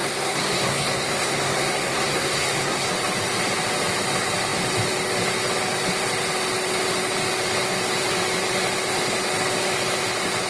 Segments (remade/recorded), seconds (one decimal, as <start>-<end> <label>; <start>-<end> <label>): 0.0-2.9 remade; 2.9-10.5 recorded